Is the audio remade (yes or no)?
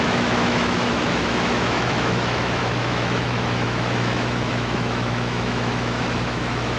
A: yes